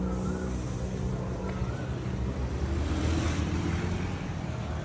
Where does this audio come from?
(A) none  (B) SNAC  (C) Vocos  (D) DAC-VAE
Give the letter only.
A